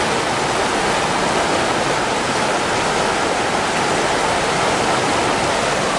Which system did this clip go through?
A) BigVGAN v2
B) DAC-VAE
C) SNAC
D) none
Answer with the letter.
D